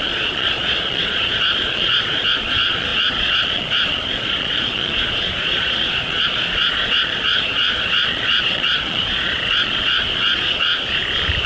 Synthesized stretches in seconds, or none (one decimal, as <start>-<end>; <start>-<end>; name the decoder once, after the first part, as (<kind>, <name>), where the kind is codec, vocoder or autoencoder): 0.0-10.7 (vocoder, Vocos)